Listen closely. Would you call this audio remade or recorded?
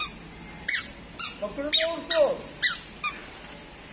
recorded